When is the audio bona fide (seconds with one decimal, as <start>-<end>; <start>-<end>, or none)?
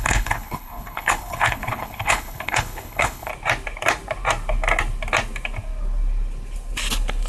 3.3-7.3